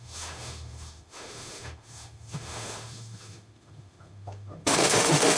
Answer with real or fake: fake